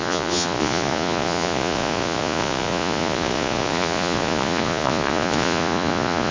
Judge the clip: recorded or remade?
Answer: remade